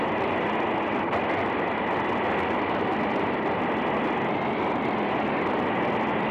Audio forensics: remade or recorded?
recorded